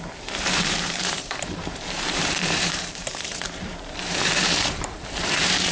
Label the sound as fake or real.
fake